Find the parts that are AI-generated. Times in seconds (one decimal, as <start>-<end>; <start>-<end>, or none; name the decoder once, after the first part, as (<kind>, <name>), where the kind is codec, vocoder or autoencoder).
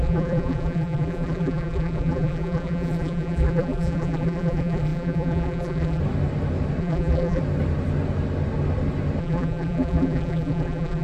0.0-6.0 (vocoder, BigVGAN v2); 6.8-7.4; 9.2-11.0